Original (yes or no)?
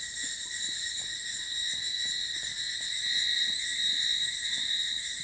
yes